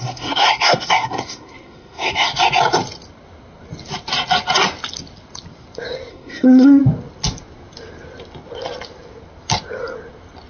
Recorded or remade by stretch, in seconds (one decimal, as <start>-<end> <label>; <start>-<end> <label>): 0.0-2.3 remade; 2.3-6.1 recorded; 6.1-6.8 remade; 6.8-10.5 recorded